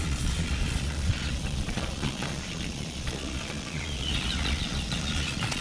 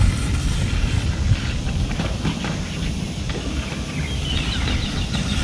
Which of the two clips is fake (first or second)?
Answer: first